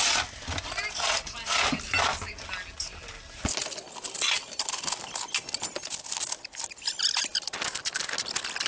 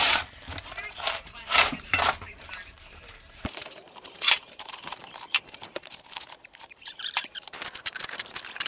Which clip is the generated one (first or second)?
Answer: second